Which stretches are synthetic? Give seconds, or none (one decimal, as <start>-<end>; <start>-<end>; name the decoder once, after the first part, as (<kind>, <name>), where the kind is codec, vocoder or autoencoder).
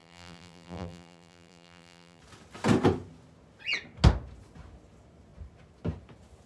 0.0-2.2 (vocoder, BigVGAN v2)